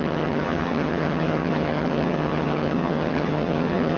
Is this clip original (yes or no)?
no